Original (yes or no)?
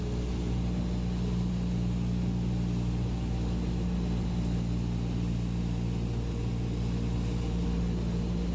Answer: yes